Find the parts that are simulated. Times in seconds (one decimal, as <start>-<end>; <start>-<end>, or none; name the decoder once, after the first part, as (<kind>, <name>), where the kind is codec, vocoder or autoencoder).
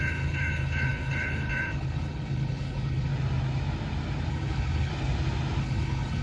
0.0-3.1 (codec, HILCodec); 4.3-4.9; 5.6-6.2